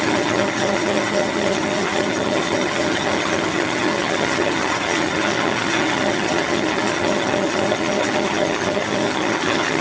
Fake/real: fake